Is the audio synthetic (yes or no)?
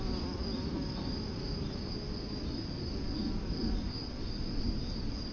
no